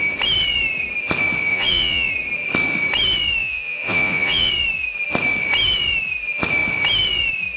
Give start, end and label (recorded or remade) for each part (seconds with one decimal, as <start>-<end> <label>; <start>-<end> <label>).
0.0-1.5 recorded; 1.5-2.1 remade; 2.1-3.4 recorded; 3.4-4.5 remade; 4.5-7.6 recorded